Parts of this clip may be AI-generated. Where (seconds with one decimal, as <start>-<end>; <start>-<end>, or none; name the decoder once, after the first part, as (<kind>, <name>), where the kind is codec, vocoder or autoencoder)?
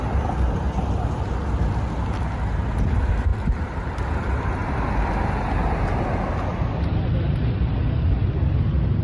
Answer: 3.3-4.0 (vocoder, BigVGAN v2)